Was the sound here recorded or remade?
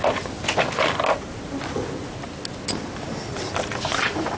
recorded